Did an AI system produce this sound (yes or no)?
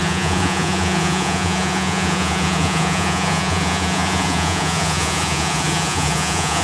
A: yes